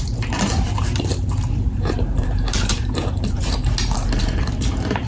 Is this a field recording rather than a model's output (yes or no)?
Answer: no